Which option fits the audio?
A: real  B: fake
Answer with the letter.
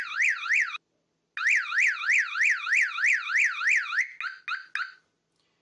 A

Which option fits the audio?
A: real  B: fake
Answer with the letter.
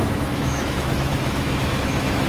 B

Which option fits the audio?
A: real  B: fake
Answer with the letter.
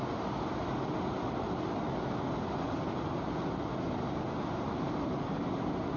A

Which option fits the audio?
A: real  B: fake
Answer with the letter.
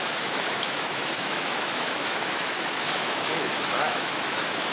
B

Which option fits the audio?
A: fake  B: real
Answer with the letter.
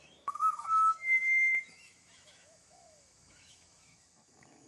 A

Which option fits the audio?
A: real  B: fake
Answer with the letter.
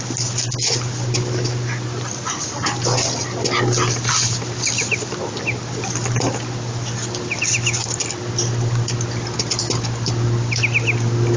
A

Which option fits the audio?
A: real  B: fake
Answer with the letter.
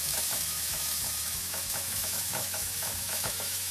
B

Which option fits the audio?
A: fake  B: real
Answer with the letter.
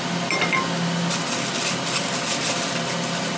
B